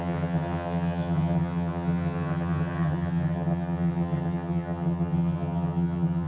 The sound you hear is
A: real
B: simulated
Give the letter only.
B